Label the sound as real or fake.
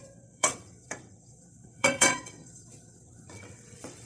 fake